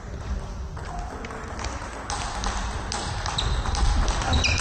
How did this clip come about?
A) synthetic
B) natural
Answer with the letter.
B